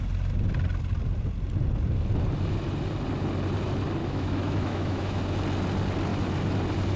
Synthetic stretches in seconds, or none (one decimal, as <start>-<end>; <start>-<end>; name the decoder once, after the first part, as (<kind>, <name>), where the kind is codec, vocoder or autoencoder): 4.0-5.2 (autoencoder, DAC-VAE)